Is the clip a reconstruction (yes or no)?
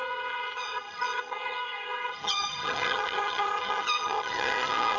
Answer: yes